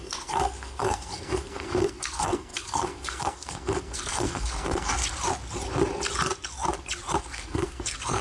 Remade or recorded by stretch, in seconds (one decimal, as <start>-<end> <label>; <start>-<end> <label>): 0.0-5.0 remade; 5.0-7.2 recorded; 7.2-8.2 remade